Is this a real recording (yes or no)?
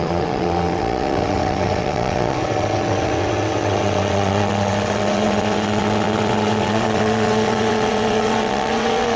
no